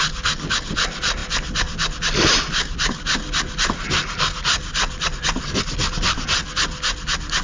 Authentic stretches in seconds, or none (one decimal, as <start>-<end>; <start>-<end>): 0.0-7.4